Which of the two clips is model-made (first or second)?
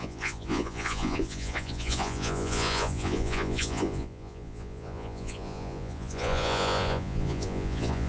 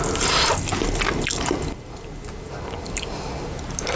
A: first